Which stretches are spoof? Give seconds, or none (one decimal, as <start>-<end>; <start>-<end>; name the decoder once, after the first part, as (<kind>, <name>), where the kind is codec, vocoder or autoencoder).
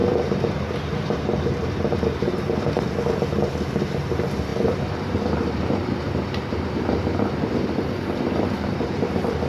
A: 0.0-9.5 (vocoder, BigVGAN v2)